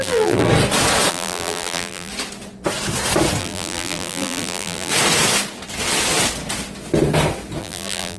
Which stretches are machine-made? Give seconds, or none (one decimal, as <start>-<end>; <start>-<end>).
0.0-0.5; 1.1-2.1; 3.4-4.9; 7.6-8.2